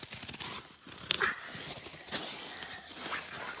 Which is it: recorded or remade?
recorded